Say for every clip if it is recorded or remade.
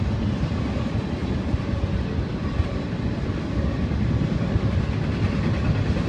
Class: recorded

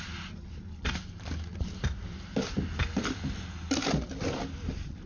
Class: recorded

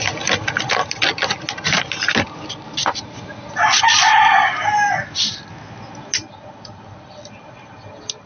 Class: recorded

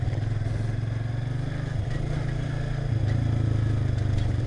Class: recorded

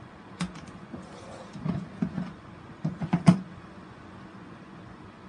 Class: remade